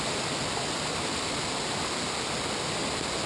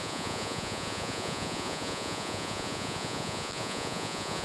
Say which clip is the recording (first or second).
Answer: first